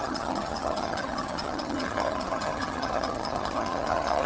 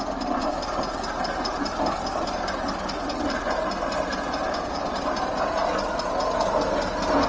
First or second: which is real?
second